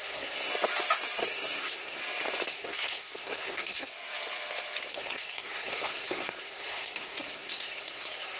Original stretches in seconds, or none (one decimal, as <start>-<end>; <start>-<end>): 0.5-1.2; 2.0-2.5; 3.9-4.9